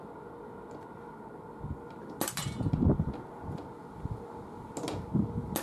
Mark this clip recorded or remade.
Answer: recorded